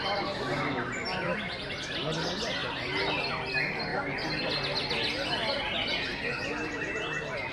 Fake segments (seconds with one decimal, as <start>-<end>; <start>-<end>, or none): none